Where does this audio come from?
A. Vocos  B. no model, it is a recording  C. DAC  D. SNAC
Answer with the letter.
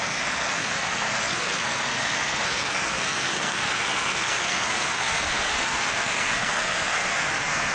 D